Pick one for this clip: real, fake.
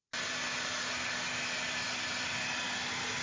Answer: real